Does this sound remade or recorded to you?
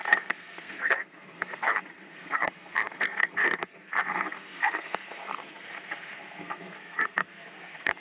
remade